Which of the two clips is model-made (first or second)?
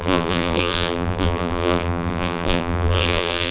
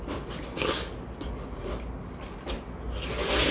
first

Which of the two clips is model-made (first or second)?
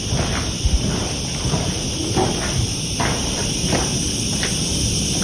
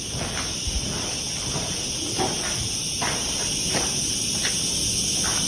first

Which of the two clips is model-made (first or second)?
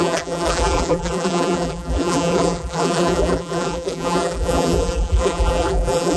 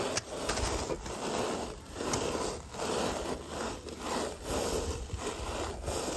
first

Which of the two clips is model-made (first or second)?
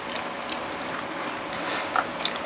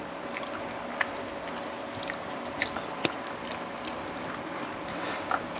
second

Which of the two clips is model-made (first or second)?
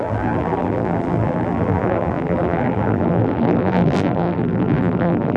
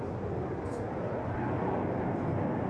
first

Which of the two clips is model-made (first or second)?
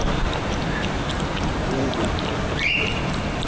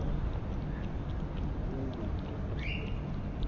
first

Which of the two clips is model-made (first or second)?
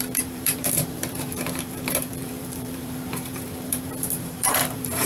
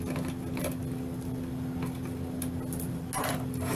first